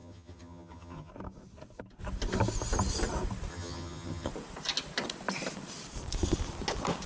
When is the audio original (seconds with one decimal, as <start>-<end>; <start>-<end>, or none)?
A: 1.1-3.5; 4.3-7.1